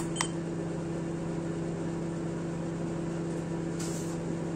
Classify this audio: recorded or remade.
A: recorded